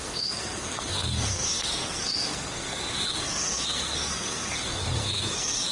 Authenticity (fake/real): fake